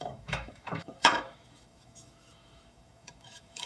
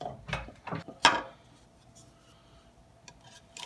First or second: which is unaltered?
second